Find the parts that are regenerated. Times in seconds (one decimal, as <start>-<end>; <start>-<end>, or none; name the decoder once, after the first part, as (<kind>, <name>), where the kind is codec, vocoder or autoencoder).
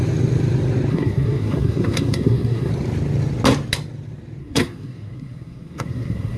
0.9-2.7 (codec, SNAC); 4.4-6.4